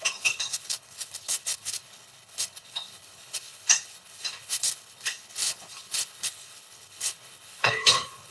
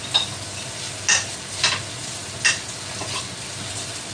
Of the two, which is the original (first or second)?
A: second